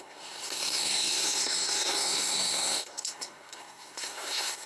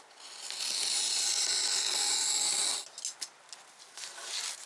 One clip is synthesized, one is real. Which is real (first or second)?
second